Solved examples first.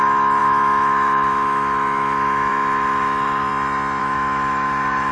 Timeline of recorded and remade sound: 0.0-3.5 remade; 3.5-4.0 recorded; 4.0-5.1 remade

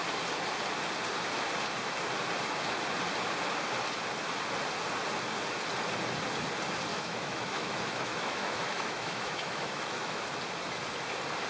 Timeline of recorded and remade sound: 0.0-6.9 recorded; 6.9-10.2 remade; 10.2-11.5 recorded

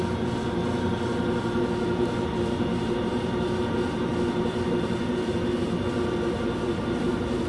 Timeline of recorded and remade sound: 0.0-7.5 recorded

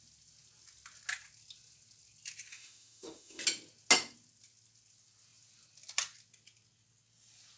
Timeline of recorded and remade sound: 0.0-2.5 recorded; 2.5-3.4 remade; 3.4-7.6 recorded

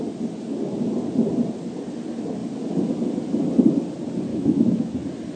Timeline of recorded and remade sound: 0.0-4.3 recorded; 4.3-4.9 remade; 4.9-5.4 recorded

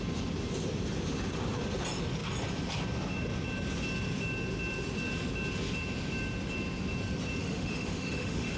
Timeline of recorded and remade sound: 0.0-7.4 recorded; 7.4-8.6 remade

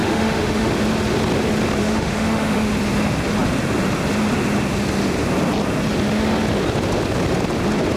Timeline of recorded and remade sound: 0.0-0.7 remade; 0.7-1.8 recorded; 1.8-2.7 remade; 2.7-8.0 recorded